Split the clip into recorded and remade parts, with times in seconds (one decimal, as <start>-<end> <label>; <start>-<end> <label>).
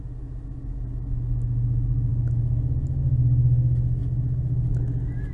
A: 0.0-5.3 recorded